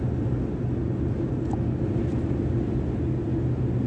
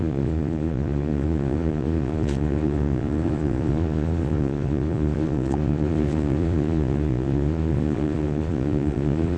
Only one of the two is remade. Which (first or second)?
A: second